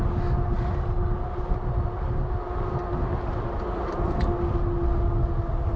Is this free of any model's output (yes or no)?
yes